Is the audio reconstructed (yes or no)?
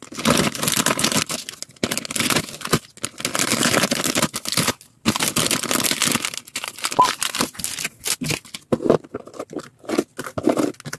no